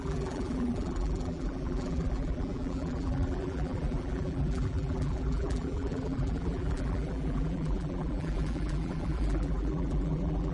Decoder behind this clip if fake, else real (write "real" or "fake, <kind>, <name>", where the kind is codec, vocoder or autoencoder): fake, vocoder, BigVGAN v2